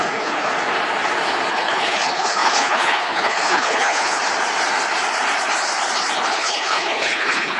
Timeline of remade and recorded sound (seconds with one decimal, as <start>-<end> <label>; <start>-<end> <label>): 0.0-0.5 remade; 0.5-1.5 recorded; 1.5-4.2 remade; 4.2-6.3 recorded; 6.3-7.6 remade